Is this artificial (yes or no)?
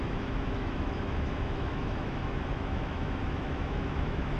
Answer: yes